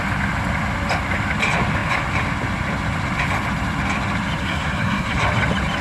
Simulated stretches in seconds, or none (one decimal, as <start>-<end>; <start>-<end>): 4.4-5.2